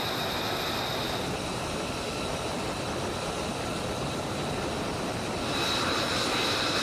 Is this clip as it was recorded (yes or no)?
yes